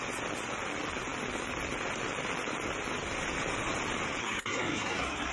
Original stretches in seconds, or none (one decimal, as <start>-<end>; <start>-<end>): 0.0-4.2